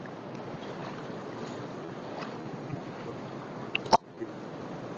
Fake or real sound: real